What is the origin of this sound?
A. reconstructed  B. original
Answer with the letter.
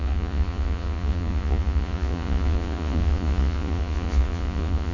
A